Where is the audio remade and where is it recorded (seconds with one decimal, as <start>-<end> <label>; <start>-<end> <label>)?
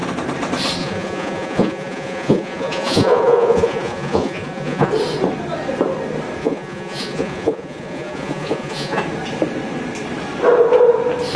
0.0-0.8 recorded; 0.8-4.9 remade; 4.9-6.4 recorded; 6.4-9.0 remade; 9.0-11.4 recorded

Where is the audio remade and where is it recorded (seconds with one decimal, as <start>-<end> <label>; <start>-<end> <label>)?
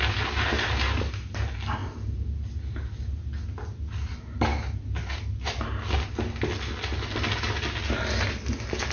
0.0-8.9 recorded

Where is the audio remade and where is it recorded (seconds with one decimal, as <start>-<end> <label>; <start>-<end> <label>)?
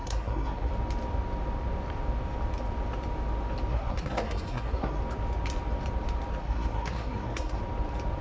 0.0-0.7 remade; 0.7-3.7 recorded; 3.7-5.0 remade; 5.0-6.4 recorded; 6.4-7.6 remade; 7.6-8.2 recorded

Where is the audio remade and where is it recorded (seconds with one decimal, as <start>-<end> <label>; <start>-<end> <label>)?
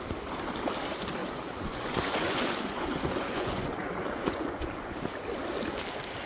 0.0-1.2 recorded; 1.2-5.0 remade; 5.0-6.3 recorded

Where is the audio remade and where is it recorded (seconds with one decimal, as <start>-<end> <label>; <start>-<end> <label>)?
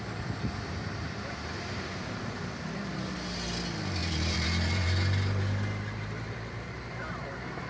0.0-0.8 recorded; 0.8-2.6 remade; 2.6-4.0 recorded; 4.0-6.8 remade; 6.8-7.7 recorded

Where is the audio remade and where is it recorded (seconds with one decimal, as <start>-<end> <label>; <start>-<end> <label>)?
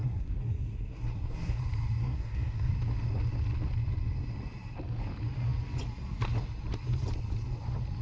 0.0-1.6 remade; 1.6-2.0 recorded; 2.0-2.7 remade; 2.7-8.0 recorded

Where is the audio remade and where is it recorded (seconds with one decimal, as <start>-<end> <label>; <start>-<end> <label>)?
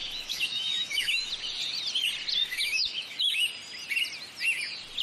0.0-1.3 remade; 1.3-2.4 recorded; 2.4-3.4 remade; 3.4-5.0 recorded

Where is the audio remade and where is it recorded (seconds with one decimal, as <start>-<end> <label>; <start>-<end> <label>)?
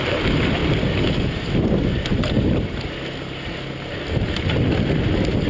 0.0-5.5 recorded